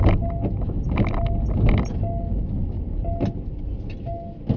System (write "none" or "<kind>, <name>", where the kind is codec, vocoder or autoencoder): none